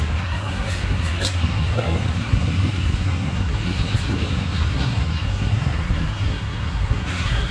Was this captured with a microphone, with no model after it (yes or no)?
no